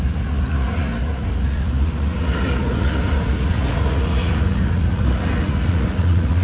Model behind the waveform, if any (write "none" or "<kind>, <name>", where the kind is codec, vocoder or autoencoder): vocoder, Vocos